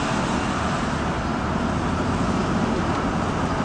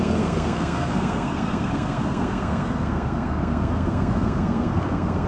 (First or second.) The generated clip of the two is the second